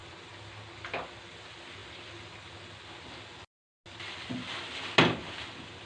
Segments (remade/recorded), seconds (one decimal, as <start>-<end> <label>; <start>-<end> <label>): 0.0-5.9 recorded